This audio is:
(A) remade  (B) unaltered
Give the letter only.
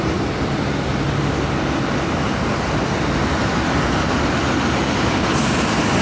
B